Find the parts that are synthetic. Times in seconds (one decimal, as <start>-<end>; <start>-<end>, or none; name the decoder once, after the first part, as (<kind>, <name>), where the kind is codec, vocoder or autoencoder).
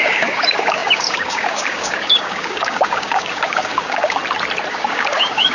0.0-4.2 (codec, DAC); 4.7-5.5